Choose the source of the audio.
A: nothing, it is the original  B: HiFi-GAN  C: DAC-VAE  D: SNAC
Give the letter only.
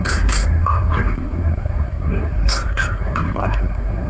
D